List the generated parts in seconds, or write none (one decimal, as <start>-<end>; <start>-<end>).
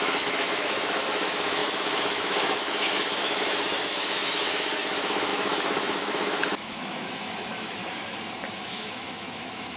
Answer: 0.0-7.8; 8.5-9.8